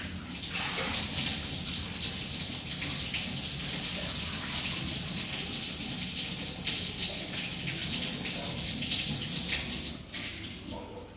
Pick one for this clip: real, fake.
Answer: real